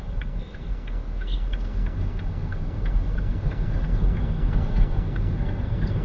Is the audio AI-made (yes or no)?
yes